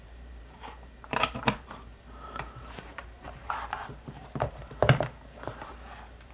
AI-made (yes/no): yes